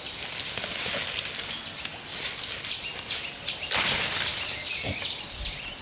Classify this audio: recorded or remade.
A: recorded